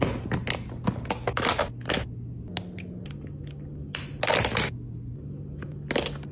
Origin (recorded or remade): recorded